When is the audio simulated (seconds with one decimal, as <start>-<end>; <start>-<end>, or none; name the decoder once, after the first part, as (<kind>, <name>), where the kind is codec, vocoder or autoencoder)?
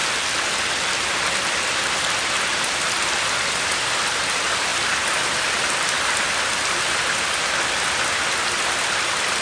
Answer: none